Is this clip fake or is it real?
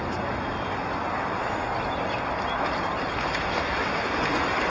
real